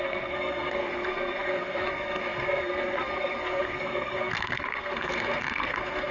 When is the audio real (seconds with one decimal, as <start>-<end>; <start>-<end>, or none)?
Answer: none